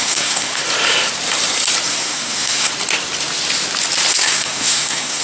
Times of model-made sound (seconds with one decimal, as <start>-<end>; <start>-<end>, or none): 0.0-0.6; 1.9-2.7; 4.1-5.2